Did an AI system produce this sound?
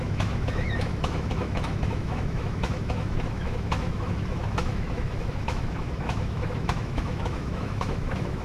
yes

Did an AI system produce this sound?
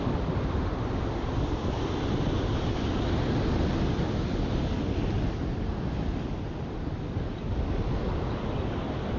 no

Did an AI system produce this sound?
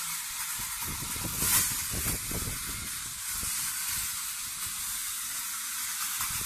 no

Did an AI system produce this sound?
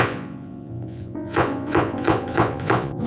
yes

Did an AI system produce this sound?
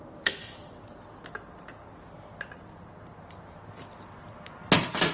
no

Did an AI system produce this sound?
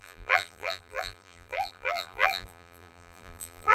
yes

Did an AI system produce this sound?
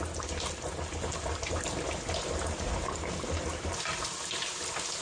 no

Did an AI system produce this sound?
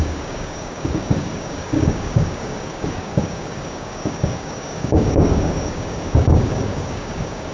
yes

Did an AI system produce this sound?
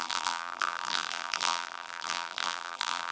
yes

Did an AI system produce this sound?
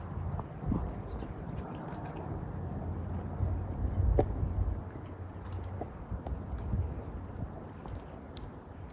no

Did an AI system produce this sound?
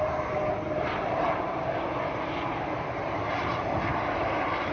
yes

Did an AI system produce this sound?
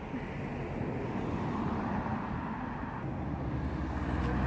no